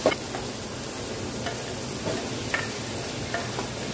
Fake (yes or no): no